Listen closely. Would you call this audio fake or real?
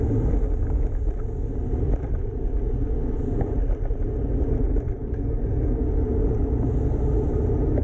real